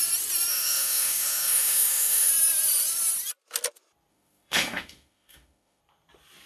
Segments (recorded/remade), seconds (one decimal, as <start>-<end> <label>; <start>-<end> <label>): 0.0-0.5 recorded; 0.5-2.3 remade; 2.3-4.1 recorded; 4.1-5.8 remade; 5.8-6.5 recorded